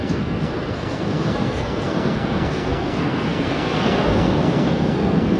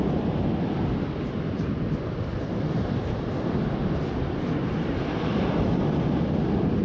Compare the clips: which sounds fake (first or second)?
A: first